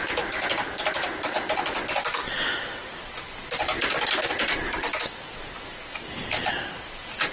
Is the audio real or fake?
real